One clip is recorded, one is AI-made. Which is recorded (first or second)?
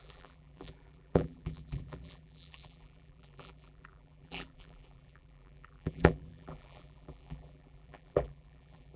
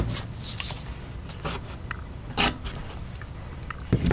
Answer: second